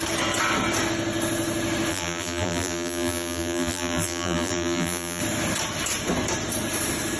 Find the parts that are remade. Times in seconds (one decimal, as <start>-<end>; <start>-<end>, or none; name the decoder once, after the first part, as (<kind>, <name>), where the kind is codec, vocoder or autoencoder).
1.9-5.2 (vocoder, BigVGAN v2)